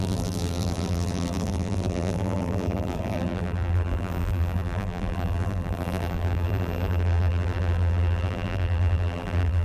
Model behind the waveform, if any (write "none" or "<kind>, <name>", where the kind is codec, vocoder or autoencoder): vocoder, BigVGAN v2